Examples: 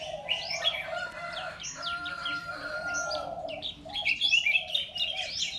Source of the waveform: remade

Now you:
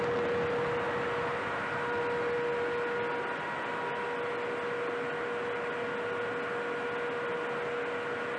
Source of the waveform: recorded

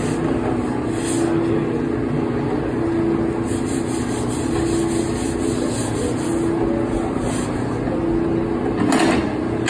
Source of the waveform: recorded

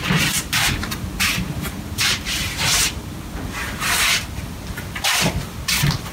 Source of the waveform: recorded